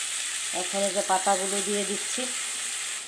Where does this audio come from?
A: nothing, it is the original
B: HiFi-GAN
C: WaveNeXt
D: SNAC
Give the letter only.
A